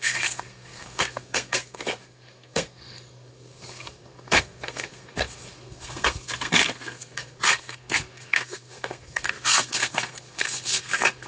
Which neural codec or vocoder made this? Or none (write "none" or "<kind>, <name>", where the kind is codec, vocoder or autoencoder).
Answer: codec, SNAC